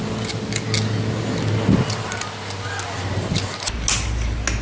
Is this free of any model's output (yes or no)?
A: yes